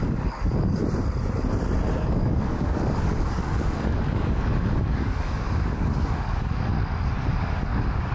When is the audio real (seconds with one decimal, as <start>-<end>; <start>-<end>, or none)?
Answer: 0.8-2.0; 6.7-7.4